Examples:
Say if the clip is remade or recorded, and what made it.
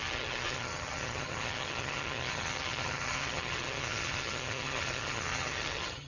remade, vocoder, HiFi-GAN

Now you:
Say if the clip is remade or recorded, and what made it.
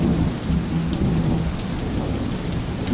recorded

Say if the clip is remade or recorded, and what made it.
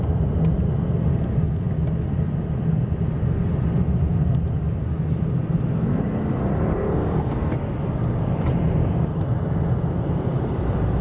recorded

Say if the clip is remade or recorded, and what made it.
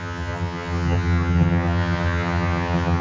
remade, vocoder, HiFi-GAN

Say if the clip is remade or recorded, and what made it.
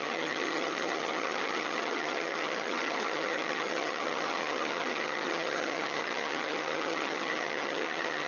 remade, vocoder, HiFi-GAN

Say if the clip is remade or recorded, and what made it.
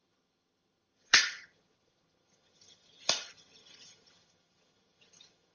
remade, vocoder, HiFi-GAN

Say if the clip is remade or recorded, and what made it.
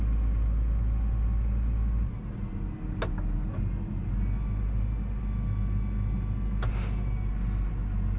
recorded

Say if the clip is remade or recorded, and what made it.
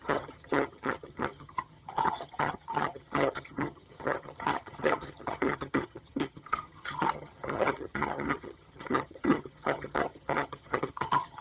remade, vocoder, HiFi-GAN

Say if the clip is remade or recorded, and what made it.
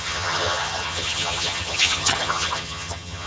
remade, vocoder, HiFi-GAN